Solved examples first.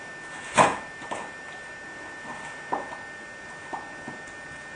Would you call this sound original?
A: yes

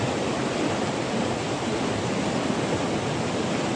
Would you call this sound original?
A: yes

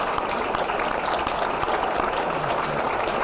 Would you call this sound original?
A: yes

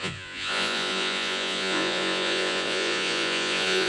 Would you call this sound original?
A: no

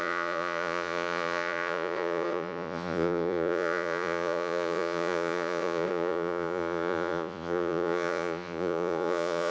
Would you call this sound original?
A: no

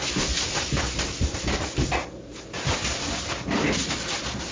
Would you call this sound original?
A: yes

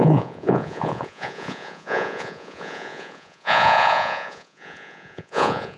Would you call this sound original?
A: no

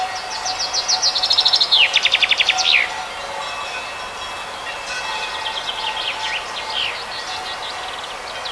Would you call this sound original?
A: yes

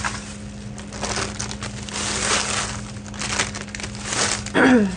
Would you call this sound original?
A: yes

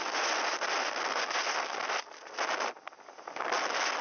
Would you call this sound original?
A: yes